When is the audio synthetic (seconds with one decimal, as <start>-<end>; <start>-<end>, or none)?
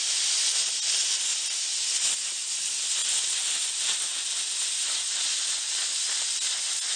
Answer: none